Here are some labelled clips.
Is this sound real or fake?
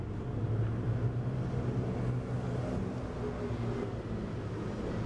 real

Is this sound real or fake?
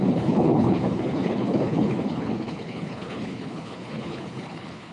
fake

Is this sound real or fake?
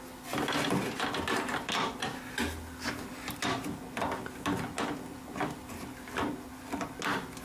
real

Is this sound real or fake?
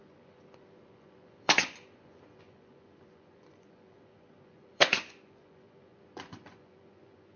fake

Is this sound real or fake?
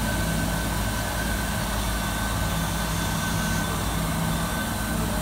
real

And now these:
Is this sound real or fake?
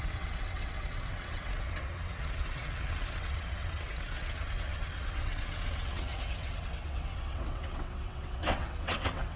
fake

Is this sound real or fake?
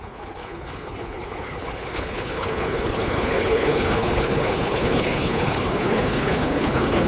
fake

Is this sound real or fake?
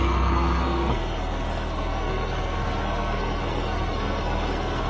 fake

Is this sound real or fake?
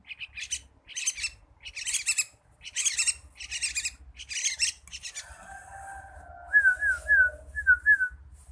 real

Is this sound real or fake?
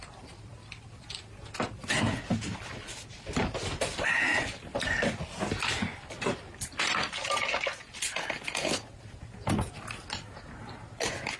real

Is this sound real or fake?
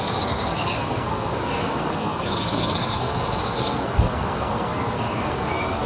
fake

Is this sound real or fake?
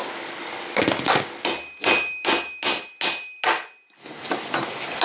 real